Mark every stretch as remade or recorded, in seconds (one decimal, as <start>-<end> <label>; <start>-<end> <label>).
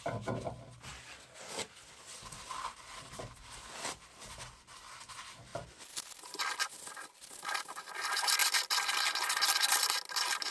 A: 0.0-10.5 recorded